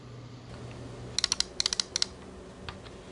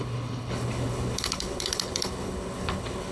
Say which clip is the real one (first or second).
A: first